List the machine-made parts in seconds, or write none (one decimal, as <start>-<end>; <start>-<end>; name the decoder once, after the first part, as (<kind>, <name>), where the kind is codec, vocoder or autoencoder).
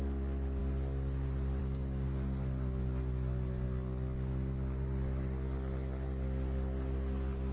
none